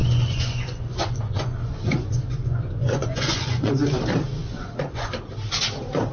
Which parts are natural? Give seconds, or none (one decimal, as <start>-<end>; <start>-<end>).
3.7-4.4; 5.2-6.1